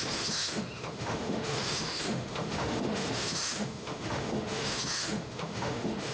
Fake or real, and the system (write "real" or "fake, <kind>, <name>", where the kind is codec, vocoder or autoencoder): fake, autoencoder, DAC-VAE